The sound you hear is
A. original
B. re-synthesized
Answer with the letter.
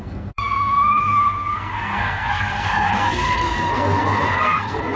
B